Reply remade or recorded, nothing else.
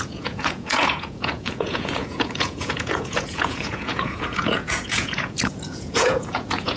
remade